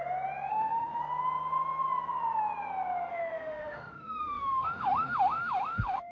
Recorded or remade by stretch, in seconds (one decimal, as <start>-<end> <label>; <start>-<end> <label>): 0.0-0.5 recorded; 0.5-1.0 remade; 1.0-3.1 recorded; 3.1-6.1 remade